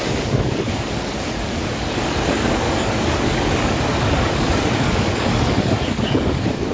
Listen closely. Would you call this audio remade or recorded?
remade